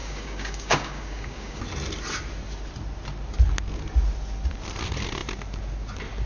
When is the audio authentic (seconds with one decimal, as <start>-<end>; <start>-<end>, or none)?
1.6-6.3